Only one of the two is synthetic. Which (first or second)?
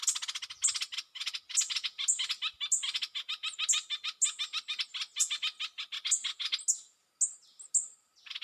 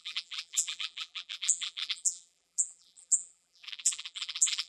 second